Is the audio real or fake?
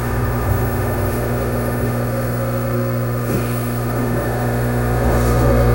fake